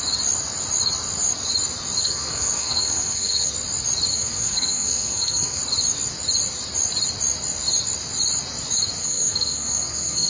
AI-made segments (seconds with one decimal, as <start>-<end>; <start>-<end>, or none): 2.0-3.5; 4.1-5.6; 9.0-10.3